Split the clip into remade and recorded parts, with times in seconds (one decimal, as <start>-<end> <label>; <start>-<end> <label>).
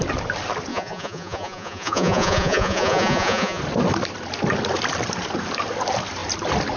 0.0-0.7 recorded; 0.7-3.6 remade; 3.6-6.8 recorded